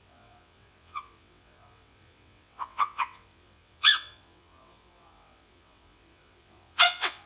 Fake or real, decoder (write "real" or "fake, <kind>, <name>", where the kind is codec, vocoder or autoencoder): fake, vocoder, WaveNeXt